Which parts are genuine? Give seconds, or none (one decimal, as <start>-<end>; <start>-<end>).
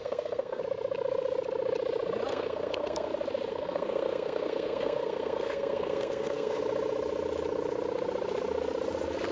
0.6-2.3; 3.1-3.5; 6.6-9.3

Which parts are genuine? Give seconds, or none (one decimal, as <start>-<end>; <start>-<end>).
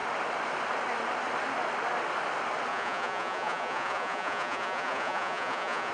0.0-2.7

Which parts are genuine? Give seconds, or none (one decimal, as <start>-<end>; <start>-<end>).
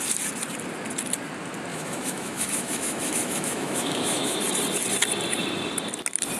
0.0-1.7; 4.4-6.4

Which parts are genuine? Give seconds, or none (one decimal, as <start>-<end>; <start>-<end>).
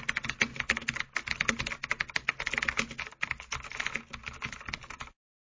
0.0-5.5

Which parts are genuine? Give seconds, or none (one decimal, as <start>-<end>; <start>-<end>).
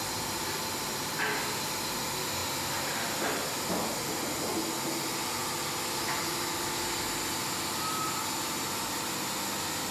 0.0-2.4; 3.3-9.9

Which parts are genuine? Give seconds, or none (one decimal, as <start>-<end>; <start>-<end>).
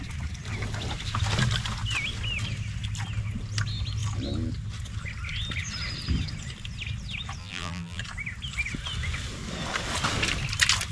0.0-7.4; 8.0-10.9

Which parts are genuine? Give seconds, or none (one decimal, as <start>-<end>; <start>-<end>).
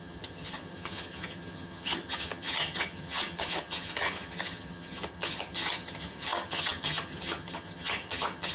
none